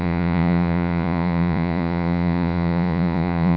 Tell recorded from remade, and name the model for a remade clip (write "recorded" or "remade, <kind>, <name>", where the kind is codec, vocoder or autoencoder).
remade, vocoder, Vocos